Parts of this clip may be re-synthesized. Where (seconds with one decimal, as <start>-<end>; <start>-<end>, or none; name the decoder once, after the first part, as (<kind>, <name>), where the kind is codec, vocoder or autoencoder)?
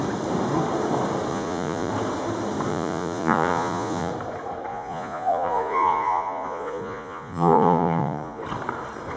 1.3-1.9 (vocoder, Vocos); 2.7-4.1; 4.7-8.4